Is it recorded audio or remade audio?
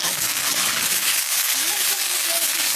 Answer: remade